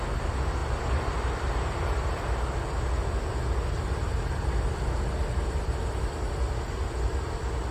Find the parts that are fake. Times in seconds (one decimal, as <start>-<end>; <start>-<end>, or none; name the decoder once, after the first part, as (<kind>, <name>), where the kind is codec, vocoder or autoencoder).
none